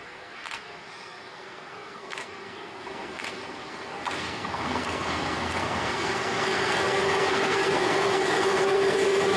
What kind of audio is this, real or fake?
fake